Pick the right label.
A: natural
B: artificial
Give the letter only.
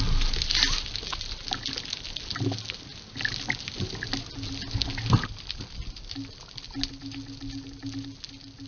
A